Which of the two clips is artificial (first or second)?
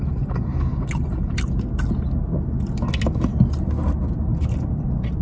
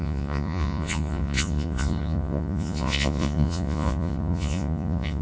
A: second